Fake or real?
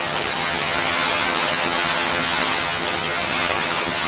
fake